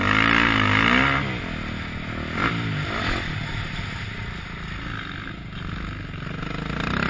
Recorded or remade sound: recorded